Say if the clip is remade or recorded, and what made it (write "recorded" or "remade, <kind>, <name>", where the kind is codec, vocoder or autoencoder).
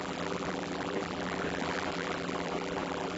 remade, vocoder, BigVGAN v2